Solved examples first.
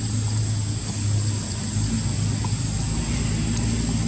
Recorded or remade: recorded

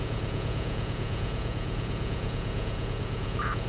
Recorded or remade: remade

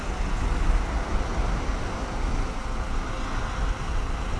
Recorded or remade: recorded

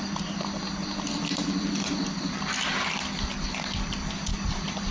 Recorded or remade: recorded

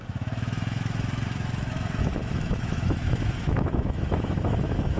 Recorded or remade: remade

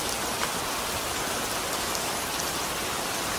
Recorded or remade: recorded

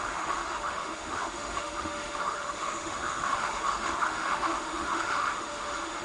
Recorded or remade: remade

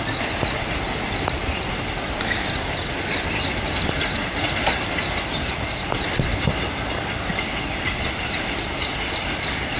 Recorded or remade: remade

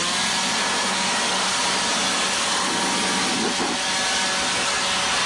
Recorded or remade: recorded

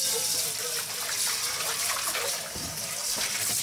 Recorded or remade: recorded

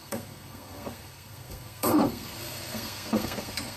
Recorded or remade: remade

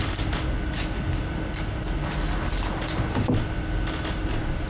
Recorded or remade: recorded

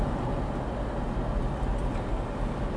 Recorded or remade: recorded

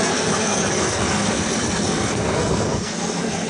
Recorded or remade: remade